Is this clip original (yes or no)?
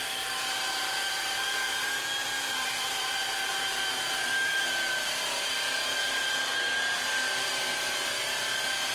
no